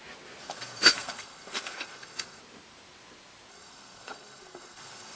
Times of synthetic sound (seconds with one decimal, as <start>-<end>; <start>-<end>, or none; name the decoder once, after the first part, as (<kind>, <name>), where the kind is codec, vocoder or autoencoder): 0.4-2.4 (codec, SNAC); 3.5-5.2